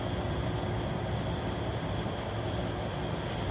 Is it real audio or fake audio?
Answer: real